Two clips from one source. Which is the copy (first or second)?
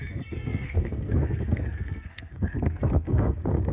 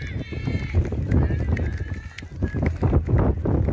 first